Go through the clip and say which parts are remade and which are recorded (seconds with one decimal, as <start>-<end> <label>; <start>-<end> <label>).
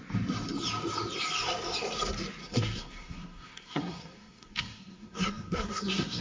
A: 0.0-2.4 recorded; 2.4-6.2 remade